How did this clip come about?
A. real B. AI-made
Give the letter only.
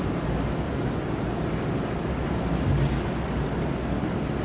A